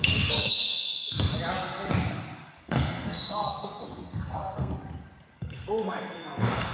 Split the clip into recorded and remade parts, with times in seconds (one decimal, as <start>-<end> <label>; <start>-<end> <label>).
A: 0.0-1.3 remade; 1.3-2.6 recorded; 2.6-4.7 remade; 4.7-5.3 recorded; 5.3-6.7 remade